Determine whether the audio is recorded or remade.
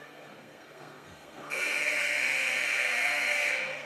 remade